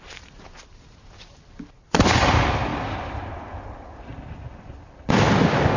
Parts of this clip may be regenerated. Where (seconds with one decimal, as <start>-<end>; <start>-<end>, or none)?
none